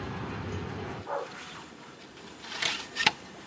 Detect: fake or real fake